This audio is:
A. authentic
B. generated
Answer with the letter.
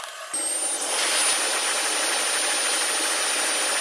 A